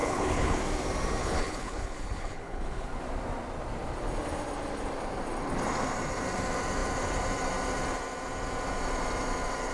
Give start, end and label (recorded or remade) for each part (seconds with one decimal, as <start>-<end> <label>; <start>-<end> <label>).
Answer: 0.0-0.6 remade; 0.6-1.2 recorded; 1.2-3.0 remade; 3.0-9.7 recorded